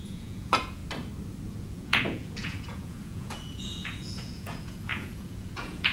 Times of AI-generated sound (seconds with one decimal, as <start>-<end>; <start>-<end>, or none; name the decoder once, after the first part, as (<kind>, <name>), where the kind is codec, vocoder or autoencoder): 0.0-0.8 (vocoder, Vocos); 1.5-5.9